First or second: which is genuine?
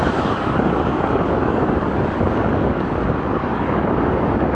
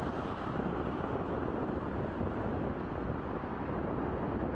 second